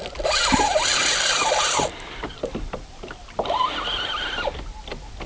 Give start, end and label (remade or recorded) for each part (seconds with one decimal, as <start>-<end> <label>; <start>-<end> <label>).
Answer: 0.0-1.0 recorded; 1.0-1.9 remade; 1.9-5.3 recorded